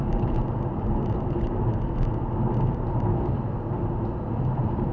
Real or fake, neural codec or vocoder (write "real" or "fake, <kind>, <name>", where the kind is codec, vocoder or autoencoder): real